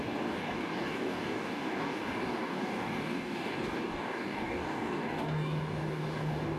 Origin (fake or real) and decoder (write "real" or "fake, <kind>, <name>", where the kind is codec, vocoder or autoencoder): fake, codec, DAC